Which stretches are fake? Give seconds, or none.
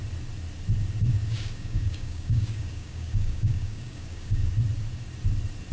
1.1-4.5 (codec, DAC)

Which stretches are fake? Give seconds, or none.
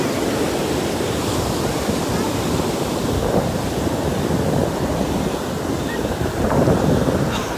0.0-3.2 (vocoder, BigVGAN v2); 4.0-7.6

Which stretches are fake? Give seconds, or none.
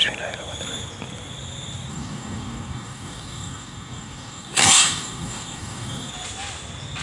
1.9-6.1 (codec, DAC)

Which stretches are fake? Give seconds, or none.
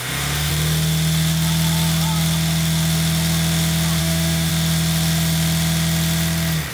0.0-0.5 (autoencoder, DAC-VAE); 4.0-4.5